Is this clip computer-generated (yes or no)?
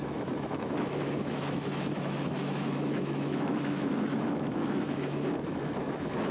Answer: yes